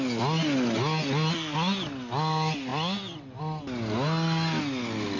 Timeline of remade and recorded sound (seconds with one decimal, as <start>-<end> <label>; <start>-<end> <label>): 0.0-5.2 recorded